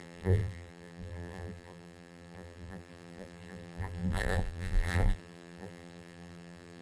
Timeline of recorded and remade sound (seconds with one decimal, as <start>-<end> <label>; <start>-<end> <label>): 0.0-6.8 remade